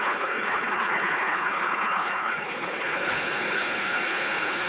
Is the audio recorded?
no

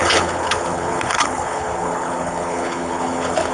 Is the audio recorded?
no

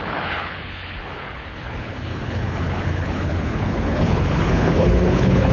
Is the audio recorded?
no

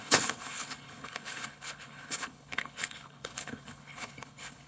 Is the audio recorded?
no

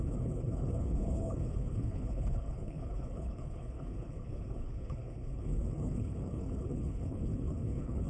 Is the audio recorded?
no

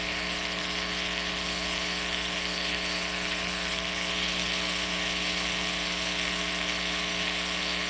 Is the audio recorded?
no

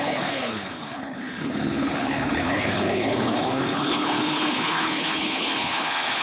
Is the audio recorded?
no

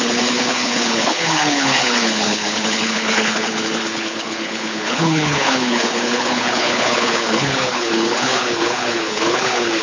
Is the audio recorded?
no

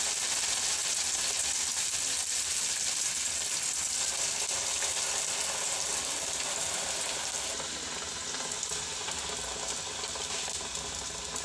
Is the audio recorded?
yes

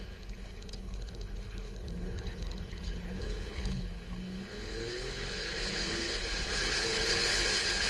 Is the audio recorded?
no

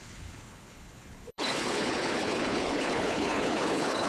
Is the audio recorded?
no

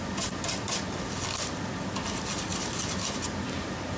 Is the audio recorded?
yes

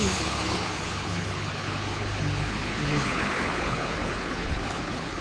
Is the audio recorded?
no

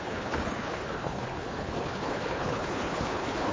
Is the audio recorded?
no